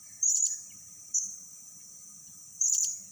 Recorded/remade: remade